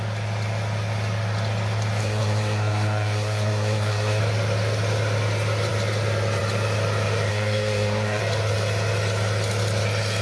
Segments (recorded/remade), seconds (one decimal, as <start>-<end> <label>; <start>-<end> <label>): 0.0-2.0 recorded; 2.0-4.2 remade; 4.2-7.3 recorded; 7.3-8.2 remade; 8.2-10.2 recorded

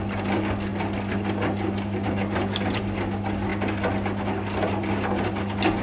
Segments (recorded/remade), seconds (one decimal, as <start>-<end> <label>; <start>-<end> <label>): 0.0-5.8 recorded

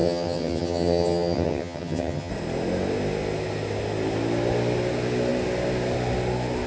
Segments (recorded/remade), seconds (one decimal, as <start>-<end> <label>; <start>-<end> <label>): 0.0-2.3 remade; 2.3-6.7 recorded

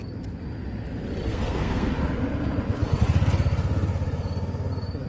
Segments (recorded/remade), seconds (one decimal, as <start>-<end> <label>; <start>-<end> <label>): 0.0-1.3 recorded; 1.3-1.9 remade; 1.9-5.1 recorded

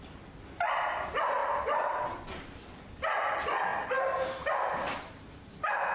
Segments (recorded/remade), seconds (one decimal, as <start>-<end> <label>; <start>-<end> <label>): 0.0-1.4 recorded; 1.4-2.0 remade; 2.0-5.9 recorded